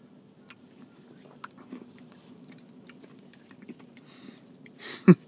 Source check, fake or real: real